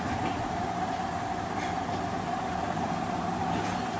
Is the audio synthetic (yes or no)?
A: no